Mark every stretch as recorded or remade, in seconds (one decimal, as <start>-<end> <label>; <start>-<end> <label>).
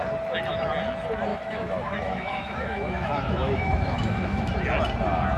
0.0-1.3 recorded; 1.3-4.5 remade; 4.5-5.4 recorded